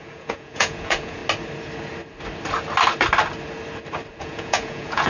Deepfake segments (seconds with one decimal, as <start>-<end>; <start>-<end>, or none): 0.0-1.2; 4.2-5.1